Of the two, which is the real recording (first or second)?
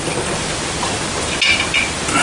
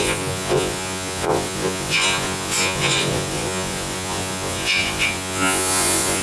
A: first